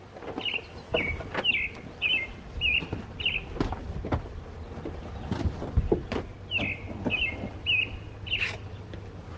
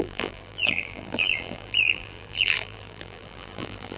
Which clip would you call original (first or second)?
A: first